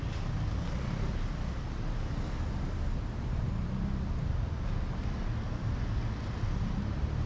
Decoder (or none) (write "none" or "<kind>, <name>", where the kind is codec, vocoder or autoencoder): none